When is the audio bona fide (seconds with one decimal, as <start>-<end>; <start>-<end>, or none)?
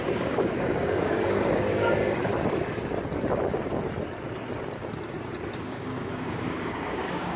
2.3-5.5